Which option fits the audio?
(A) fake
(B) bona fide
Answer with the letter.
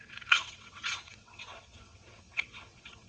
A